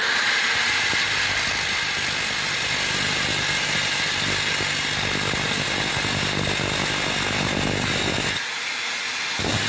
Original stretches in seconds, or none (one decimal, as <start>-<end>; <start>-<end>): 0.0-9.7